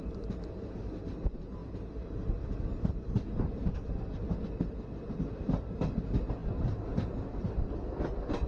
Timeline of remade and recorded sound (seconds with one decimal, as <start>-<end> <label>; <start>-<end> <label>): 0.0-8.5 recorded